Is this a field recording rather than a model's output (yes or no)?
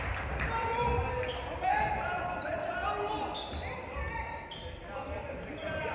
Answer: yes